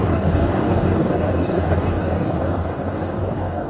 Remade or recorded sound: remade